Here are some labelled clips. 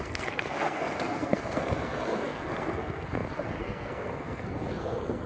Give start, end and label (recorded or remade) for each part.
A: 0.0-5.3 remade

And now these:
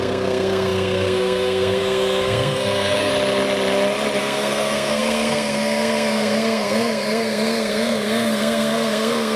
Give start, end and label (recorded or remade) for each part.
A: 0.0-3.1 remade; 3.1-4.2 recorded; 4.2-9.4 remade

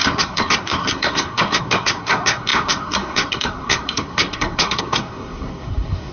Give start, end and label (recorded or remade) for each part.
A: 0.0-6.1 remade

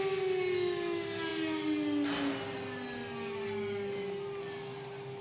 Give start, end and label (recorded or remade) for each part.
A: 0.0-5.2 recorded

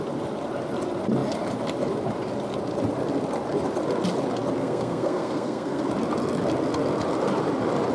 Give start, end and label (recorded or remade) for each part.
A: 0.0-4.6 recorded; 4.6-5.9 remade; 5.9-7.9 recorded

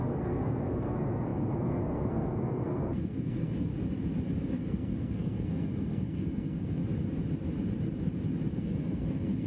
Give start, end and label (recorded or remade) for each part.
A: 0.0-3.7 remade; 3.7-4.5 recorded; 4.5-6.8 remade; 6.8-8.6 recorded; 8.6-9.5 remade

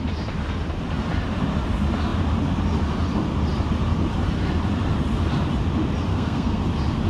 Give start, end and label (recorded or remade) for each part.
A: 0.0-6.1 recorded; 6.1-6.6 remade; 6.6-7.1 recorded

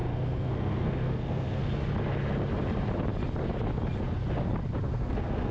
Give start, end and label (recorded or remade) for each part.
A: 0.0-1.6 remade; 1.6-4.9 recorded; 4.9-5.5 remade